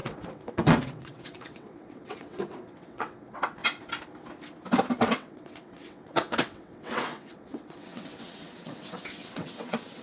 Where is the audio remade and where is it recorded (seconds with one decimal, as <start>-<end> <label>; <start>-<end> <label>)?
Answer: 0.0-3.6 remade; 3.6-5.0 recorded; 5.0-10.0 remade